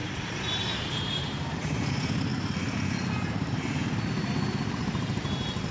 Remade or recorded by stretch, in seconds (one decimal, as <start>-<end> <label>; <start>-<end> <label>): 0.0-1.9 remade; 1.9-5.7 recorded